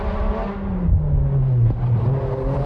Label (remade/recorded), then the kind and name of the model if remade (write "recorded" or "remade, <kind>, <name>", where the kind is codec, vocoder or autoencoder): recorded